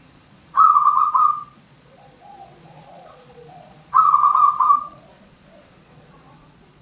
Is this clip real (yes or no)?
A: no